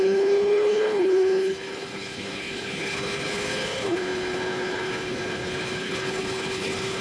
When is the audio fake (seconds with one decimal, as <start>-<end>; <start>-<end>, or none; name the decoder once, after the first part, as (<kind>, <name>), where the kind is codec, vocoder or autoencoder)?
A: 0.0-7.0 (codec, HILCodec)